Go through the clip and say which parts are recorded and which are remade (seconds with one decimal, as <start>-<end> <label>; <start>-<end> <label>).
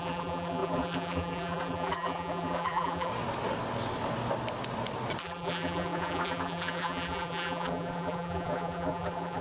0.0-3.1 remade; 3.1-5.2 recorded; 5.2-9.4 remade